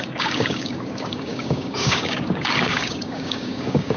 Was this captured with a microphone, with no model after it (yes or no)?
no